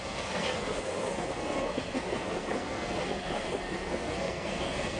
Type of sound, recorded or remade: remade